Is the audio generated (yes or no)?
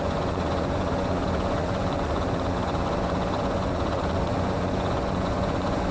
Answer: yes